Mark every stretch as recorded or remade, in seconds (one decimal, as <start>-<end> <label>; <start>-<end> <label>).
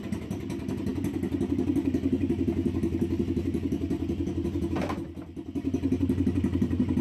0.0-7.0 recorded